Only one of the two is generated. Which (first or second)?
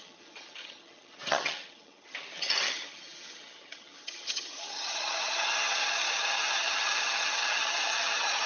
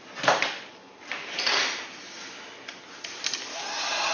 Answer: first